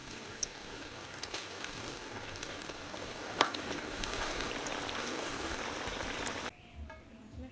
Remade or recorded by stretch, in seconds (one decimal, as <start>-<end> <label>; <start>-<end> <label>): 0.0-4.5 remade; 4.5-5.0 recorded; 5.0-5.6 remade; 5.6-7.5 recorded